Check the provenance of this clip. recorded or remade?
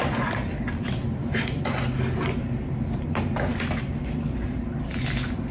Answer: recorded